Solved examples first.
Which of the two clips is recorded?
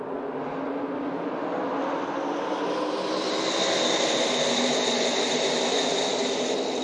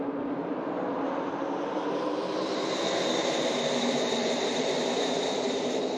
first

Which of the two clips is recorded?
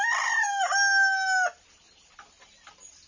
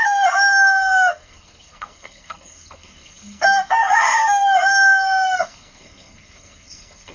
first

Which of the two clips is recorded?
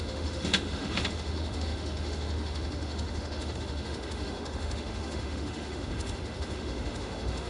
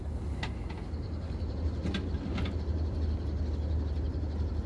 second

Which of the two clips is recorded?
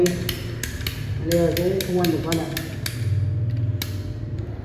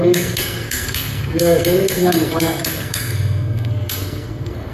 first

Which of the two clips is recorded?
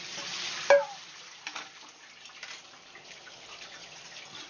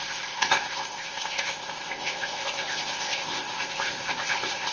first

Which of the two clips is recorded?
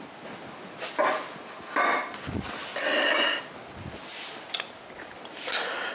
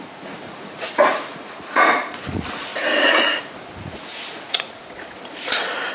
first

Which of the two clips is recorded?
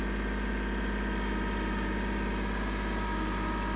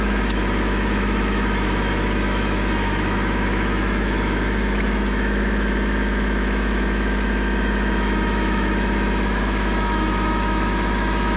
first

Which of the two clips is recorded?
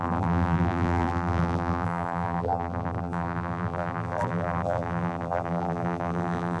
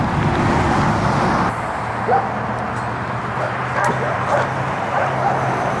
second